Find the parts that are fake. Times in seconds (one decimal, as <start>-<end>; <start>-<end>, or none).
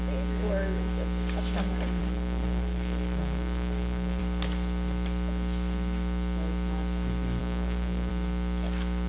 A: 2.0-4.2; 7.4-8.1